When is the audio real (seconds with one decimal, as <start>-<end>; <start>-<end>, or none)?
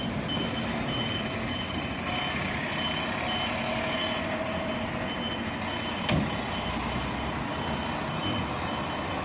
0.0-9.2